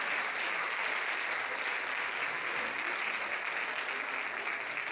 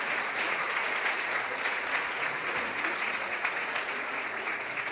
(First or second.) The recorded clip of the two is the first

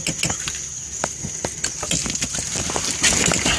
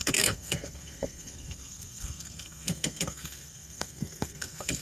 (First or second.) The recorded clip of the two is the first